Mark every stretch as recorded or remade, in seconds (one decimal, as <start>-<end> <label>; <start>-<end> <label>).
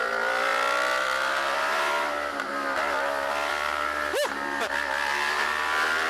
0.0-6.1 recorded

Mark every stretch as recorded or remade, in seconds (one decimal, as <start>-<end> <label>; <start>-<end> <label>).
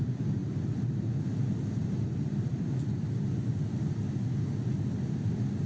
0.0-0.4 recorded; 0.4-3.8 remade; 3.8-5.7 recorded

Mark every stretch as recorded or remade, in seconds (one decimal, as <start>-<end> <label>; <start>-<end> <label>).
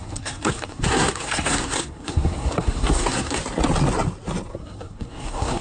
0.0-3.4 remade; 3.4-4.5 recorded; 4.5-5.6 remade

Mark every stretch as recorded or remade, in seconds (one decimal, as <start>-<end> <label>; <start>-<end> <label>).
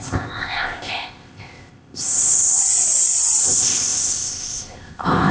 0.0-2.6 remade; 2.6-3.4 recorded; 3.4-5.3 remade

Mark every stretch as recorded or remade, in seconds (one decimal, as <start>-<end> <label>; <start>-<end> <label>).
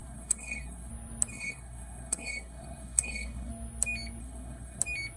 0.0-0.9 remade; 0.9-1.3 recorded; 1.3-3.5 remade; 3.5-4.2 recorded; 4.2-4.8 remade; 4.8-5.2 recorded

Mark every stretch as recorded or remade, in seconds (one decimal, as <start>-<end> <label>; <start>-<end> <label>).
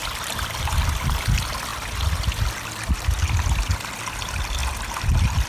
0.0-1.2 remade; 1.2-5.5 recorded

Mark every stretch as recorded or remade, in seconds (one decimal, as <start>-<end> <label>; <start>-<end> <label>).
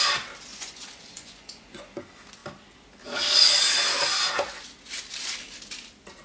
0.0-0.5 recorded; 0.5-2.0 remade; 2.0-6.2 recorded